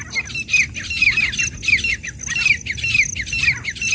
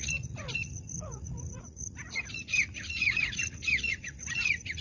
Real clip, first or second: first